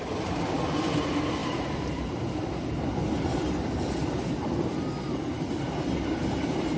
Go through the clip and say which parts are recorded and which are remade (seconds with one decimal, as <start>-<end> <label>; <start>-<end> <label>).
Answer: 0.0-6.8 remade

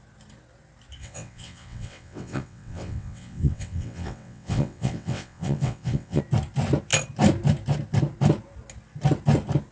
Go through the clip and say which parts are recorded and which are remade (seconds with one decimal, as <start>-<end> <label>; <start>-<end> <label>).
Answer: 0.0-1.0 recorded; 1.0-6.2 remade; 6.2-9.7 recorded